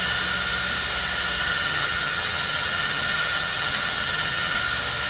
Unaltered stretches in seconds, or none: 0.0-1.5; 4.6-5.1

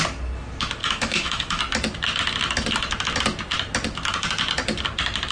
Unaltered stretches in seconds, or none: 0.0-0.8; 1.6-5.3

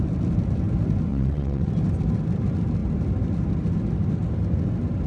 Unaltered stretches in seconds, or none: 0.0-1.1; 1.7-5.1

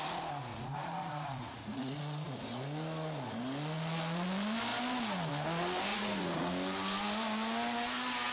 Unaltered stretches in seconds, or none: 0.0-0.5; 2.4-5.9; 6.5-8.3